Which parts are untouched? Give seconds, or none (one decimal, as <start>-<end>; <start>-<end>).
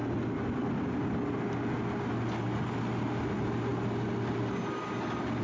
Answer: 0.0-5.4